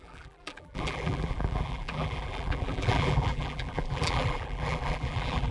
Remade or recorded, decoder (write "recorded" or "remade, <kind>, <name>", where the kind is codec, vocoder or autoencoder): remade, vocoder, BigVGAN v2